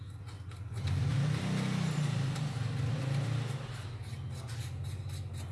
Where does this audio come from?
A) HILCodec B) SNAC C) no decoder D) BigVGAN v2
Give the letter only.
C